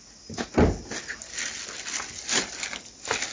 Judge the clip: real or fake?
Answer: real